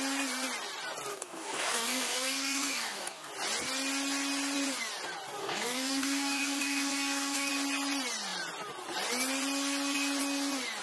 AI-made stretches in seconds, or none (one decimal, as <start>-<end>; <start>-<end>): 1.1-3.3; 5.4-7.5